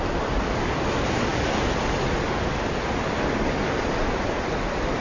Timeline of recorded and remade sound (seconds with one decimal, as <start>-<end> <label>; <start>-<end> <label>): 0.0-5.0 recorded